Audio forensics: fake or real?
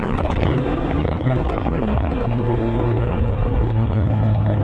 fake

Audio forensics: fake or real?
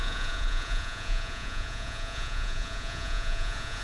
fake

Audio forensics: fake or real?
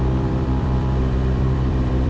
fake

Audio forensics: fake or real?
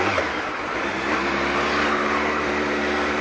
real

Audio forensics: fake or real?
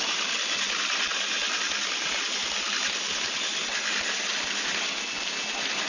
real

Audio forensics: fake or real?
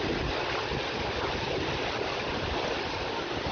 real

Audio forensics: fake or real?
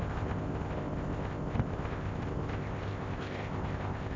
fake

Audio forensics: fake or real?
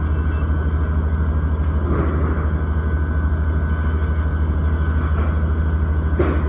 real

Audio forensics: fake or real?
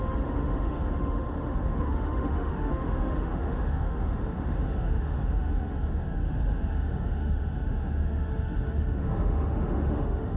fake